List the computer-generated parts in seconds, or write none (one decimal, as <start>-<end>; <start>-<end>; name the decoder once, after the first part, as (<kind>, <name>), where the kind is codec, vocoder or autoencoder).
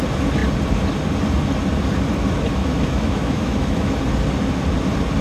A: 2.6-4.0 (autoencoder, DAC-VAE)